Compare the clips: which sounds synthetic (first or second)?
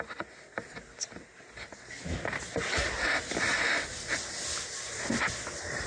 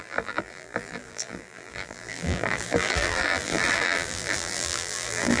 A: second